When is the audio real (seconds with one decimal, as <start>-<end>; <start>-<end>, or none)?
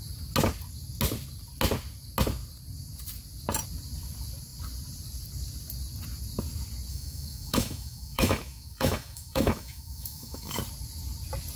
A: 0.0-6.9; 10.6-11.6